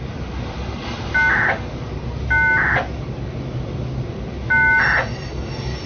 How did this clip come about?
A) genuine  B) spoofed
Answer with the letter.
A